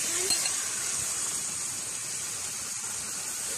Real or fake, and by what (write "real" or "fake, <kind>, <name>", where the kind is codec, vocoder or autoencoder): real